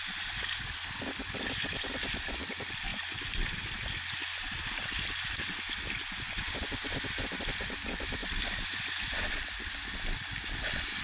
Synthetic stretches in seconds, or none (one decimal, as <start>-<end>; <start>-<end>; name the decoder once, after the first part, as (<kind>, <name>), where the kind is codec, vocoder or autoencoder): none